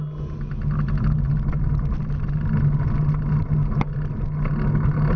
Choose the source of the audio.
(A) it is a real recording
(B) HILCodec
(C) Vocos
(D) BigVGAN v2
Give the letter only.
A